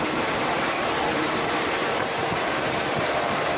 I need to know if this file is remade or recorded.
remade